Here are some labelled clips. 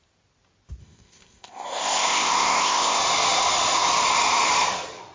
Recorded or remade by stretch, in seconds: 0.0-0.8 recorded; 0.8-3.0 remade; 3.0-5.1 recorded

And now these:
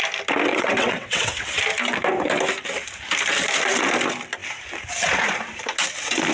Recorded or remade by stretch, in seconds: 0.0-0.5 recorded; 0.5-1.6 remade; 1.6-6.3 recorded

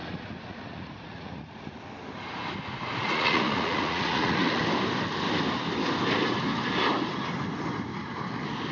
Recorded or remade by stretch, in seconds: 0.0-1.8 remade; 1.8-3.0 recorded; 3.0-4.6 remade; 4.6-8.7 recorded

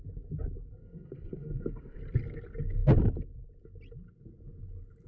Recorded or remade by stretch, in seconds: 0.0-0.8 recorded; 0.8-2.0 remade; 2.0-5.1 recorded

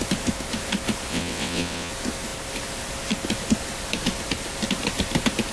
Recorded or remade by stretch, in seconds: 0.0-1.1 recorded; 1.1-1.9 remade; 1.9-5.5 recorded